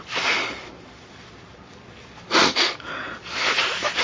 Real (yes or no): no